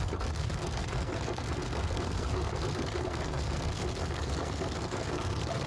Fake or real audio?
fake